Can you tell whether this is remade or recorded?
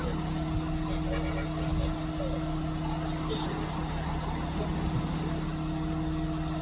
recorded